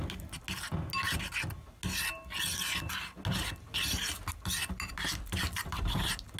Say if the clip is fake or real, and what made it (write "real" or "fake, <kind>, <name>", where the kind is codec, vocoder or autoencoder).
real